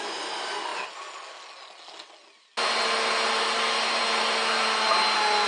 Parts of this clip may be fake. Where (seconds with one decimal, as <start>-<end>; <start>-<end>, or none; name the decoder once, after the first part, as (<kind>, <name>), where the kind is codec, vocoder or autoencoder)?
none